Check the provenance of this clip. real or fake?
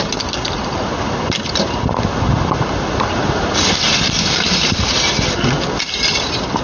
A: real